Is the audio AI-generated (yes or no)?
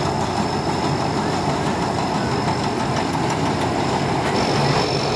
no